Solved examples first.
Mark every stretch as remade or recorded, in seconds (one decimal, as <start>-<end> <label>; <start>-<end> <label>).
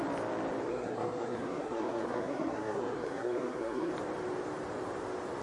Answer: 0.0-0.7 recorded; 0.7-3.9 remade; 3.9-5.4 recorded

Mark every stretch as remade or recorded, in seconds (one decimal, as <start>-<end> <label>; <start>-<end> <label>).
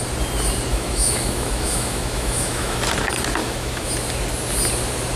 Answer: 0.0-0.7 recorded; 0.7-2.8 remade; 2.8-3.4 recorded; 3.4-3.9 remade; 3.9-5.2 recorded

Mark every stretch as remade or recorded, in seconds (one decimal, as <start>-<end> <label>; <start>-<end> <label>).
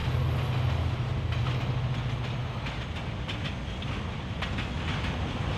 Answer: 0.0-5.6 recorded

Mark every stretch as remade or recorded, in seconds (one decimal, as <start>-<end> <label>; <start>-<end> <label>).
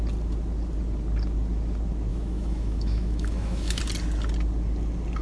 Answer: 0.0-2.1 recorded; 2.1-3.8 remade; 3.8-5.2 recorded